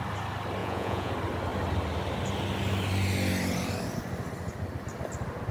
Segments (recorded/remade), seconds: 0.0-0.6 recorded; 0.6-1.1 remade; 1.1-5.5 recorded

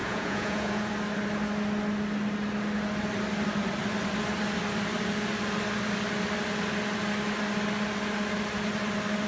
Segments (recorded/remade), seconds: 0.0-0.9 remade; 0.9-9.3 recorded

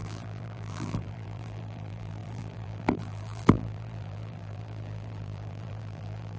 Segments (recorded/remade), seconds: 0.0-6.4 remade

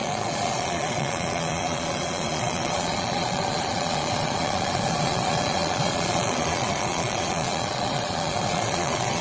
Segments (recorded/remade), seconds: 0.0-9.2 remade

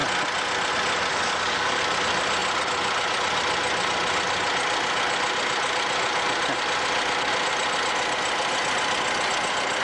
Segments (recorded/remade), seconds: 0.0-1.1 recorded; 1.1-1.8 remade; 1.8-9.8 recorded

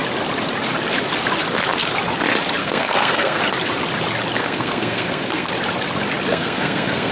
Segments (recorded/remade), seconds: 0.0-2.6 recorded; 2.6-3.4 remade; 3.4-4.4 recorded; 4.4-5.5 remade; 5.5-6.3 recorded; 6.3-7.1 remade